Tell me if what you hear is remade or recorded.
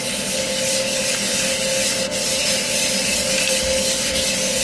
recorded